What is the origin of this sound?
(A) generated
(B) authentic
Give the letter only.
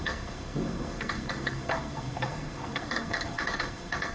A